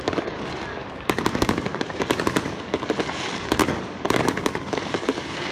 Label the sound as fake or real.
fake